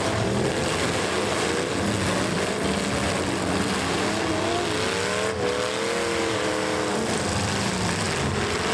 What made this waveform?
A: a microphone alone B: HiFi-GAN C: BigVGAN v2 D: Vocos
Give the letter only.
A